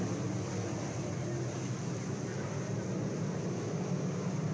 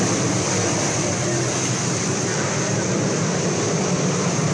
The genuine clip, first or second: first